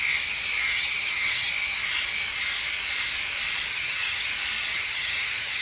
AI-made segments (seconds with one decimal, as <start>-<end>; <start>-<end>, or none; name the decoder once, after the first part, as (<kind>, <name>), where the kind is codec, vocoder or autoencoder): 0.6-1.5 (vocoder, HiFi-GAN); 3.7-4.3; 4.7-5.6